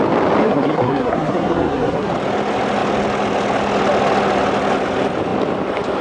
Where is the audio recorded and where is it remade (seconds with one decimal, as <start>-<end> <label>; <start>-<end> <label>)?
0.0-0.4 recorded; 0.4-2.1 remade; 2.1-6.0 recorded